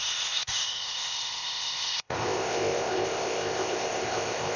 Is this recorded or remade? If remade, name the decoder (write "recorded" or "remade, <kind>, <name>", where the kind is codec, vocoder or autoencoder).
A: remade, codec, ZipCodec